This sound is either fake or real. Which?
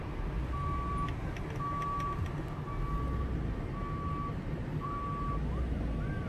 real